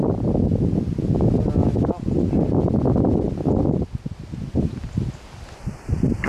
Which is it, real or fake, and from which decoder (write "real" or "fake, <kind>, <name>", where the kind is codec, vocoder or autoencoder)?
real